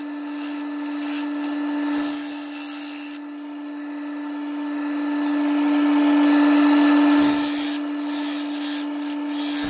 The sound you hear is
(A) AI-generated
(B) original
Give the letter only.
B